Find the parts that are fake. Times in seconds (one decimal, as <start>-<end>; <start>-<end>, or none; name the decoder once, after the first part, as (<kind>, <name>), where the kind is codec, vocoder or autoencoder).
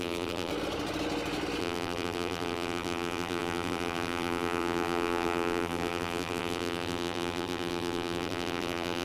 0.0-0.5 (vocoder, BigVGAN v2); 1.6-9.0